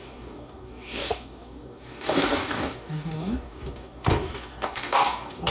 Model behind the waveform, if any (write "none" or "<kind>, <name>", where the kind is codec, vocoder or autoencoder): codec, DAC